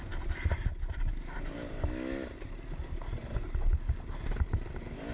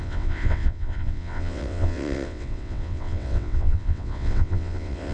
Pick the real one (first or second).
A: first